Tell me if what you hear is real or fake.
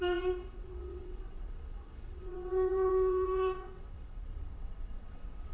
fake